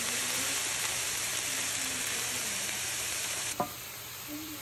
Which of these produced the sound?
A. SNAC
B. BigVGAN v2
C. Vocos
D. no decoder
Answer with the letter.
B